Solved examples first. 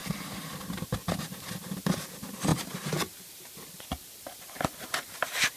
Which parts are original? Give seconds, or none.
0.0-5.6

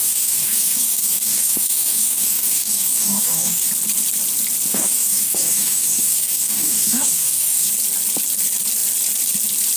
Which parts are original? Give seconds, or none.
3.7-4.7; 7.7-9.8

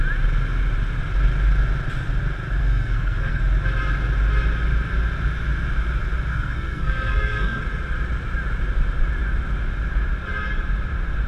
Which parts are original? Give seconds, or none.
0.0-2.6; 3.4-6.3; 7.6-11.3